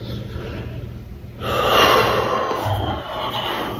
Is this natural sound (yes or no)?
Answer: yes